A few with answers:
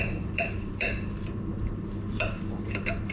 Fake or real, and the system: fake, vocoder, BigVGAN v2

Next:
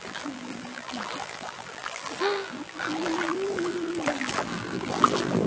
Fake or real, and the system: fake, vocoder, BigVGAN v2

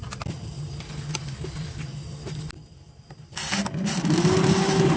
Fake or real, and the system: real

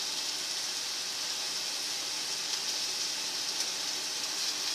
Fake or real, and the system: real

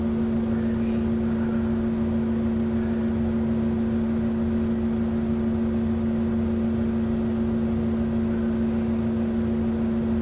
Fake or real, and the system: real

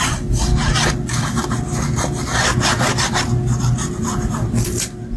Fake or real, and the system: real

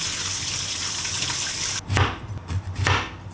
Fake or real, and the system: real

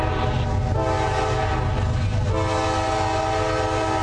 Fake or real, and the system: real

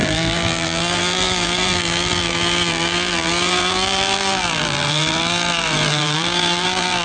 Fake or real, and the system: fake, vocoder, BigVGAN v2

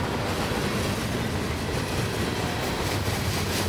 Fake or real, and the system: real